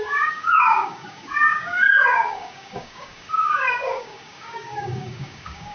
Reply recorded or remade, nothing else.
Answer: remade